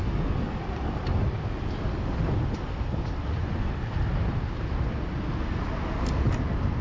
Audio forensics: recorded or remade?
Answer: recorded